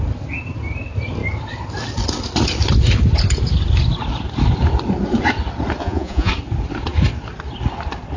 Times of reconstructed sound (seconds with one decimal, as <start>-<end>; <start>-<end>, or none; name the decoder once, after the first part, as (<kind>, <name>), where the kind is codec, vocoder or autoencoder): 5.8-6.3 (vocoder, Vocos)